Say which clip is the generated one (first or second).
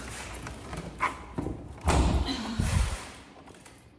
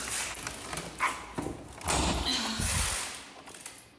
first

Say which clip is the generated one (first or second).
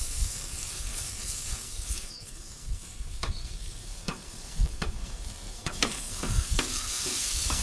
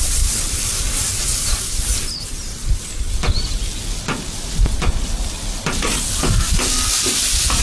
first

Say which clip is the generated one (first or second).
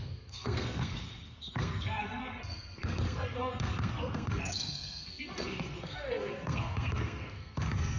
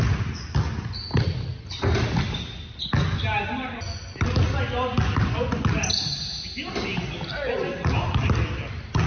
first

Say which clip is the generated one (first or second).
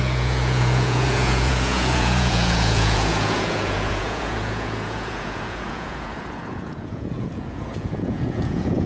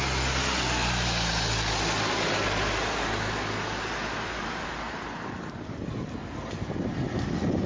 first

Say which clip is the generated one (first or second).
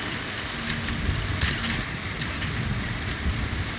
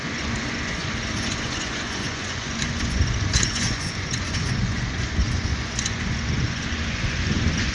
second